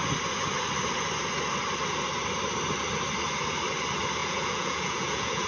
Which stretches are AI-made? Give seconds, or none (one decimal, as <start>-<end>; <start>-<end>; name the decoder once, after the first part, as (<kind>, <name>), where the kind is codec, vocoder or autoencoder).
4.2-5.5 (vocoder, Vocos)